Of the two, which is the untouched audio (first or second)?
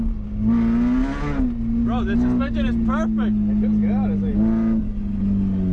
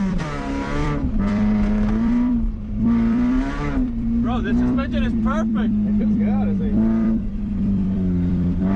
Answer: first